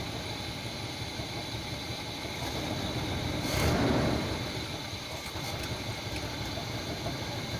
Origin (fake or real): real